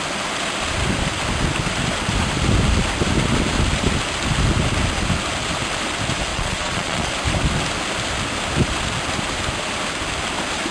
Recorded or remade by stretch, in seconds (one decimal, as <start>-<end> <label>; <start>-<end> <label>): 0.0-6.3 recorded; 6.3-7.1 remade; 7.1-10.7 recorded